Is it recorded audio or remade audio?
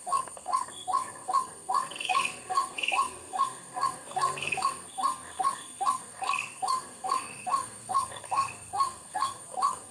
remade